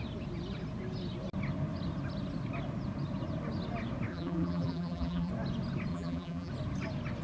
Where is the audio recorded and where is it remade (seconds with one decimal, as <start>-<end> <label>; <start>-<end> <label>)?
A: 0.0-4.1 recorded; 4.1-5.3 remade; 5.3-5.9 recorded; 5.9-6.5 remade; 6.5-7.2 recorded